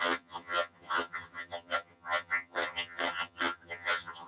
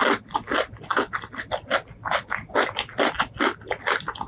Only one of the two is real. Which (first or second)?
second